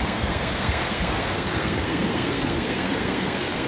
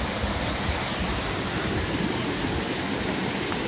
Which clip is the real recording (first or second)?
second